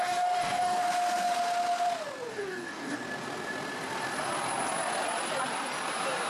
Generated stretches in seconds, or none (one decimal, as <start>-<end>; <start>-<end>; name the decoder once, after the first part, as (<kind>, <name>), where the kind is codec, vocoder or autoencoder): 0.0-0.8 (codec, DAC); 2.3-3.0